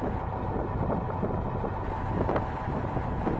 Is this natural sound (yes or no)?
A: yes